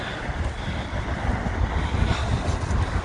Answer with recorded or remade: recorded